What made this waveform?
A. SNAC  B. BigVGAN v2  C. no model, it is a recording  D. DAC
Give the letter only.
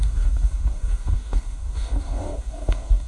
D